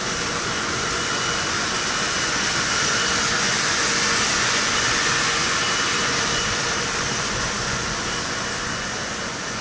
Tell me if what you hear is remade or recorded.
remade